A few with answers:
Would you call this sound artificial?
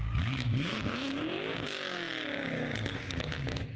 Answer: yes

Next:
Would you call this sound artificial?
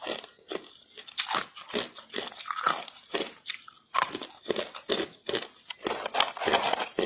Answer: no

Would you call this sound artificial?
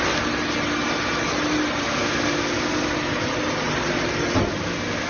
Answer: no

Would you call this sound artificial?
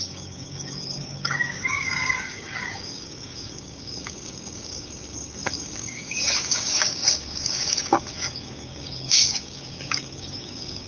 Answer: yes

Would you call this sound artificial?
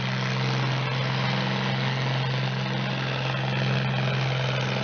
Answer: no